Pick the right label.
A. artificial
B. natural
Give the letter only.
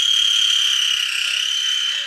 B